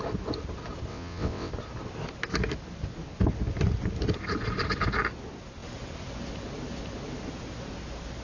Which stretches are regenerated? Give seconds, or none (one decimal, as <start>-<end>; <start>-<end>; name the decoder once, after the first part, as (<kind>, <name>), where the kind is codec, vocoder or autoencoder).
0.9-1.5 (vocoder, WaveNeXt)